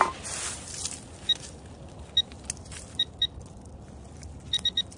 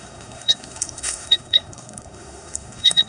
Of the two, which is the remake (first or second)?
second